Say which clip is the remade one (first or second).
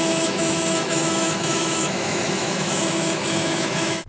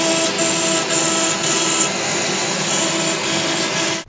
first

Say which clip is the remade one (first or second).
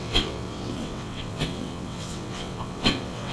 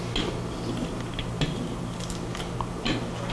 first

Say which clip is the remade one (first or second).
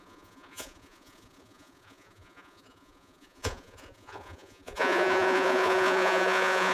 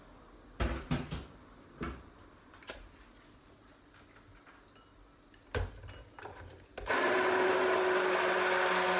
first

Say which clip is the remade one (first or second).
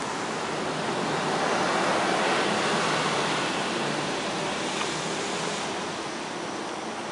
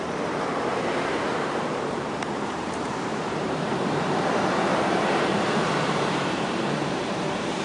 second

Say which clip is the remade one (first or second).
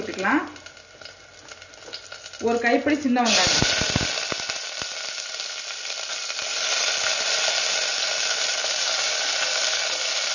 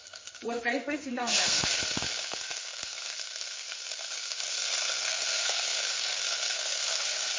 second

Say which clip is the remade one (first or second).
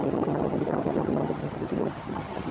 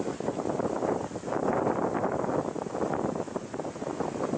first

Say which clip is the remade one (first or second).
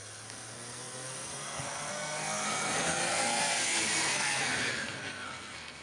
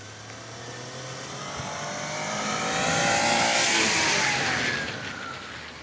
first